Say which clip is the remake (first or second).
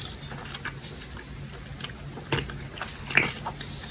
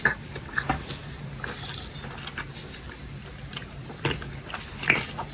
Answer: second